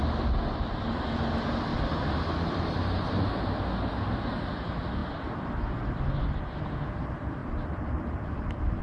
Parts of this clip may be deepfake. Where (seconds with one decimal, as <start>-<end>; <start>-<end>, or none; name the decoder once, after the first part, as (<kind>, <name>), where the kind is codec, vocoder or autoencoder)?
1.7-3.1 (vocoder, BigVGAN v2); 7.4-8.8